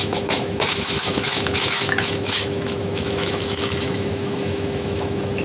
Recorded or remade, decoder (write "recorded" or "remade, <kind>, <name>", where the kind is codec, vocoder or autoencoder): remade, autoencoder, DAC-VAE